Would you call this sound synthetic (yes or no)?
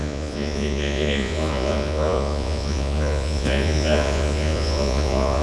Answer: yes